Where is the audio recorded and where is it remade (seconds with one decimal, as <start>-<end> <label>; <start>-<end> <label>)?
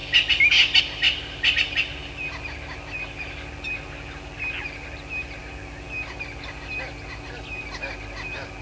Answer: 0.0-8.6 recorded